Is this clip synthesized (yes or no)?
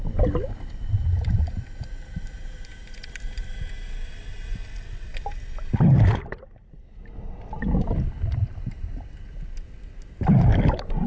no